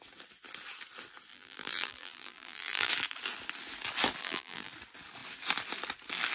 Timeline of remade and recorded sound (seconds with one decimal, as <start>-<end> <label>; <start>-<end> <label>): 0.0-1.3 recorded; 1.3-2.9 remade; 2.9-4.2 recorded; 4.2-4.7 remade; 4.7-6.3 recorded